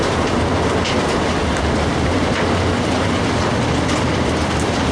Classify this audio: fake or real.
fake